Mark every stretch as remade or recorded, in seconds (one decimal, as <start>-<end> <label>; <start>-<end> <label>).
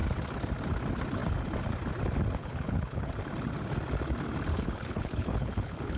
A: 0.0-2.4 recorded; 2.4-3.1 remade; 3.1-4.5 recorded; 4.5-6.0 remade